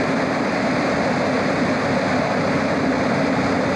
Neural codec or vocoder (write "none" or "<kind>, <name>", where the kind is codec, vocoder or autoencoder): none